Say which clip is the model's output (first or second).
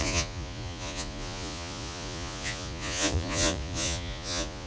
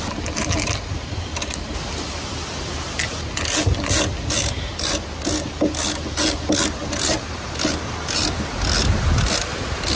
first